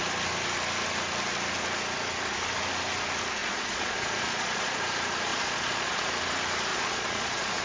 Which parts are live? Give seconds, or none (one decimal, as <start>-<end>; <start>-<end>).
0.0-3.4; 4.8-5.3; 6.1-6.7